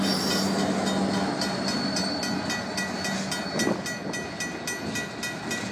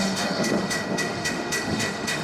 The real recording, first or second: first